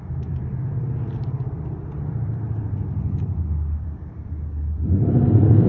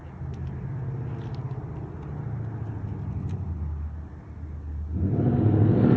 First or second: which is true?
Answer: second